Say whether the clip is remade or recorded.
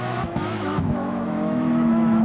remade